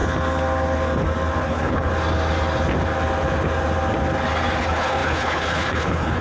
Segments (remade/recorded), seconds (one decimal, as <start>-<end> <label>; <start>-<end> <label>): 0.0-1.4 recorded; 1.4-1.9 remade; 1.9-4.6 recorded; 4.6-6.2 remade